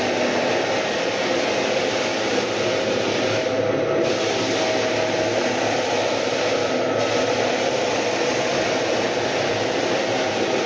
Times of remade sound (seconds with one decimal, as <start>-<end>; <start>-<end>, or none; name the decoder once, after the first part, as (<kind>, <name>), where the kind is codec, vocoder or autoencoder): none